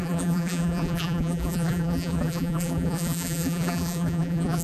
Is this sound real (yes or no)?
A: no